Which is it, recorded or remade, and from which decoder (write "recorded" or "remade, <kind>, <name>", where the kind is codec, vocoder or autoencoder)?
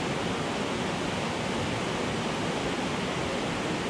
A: recorded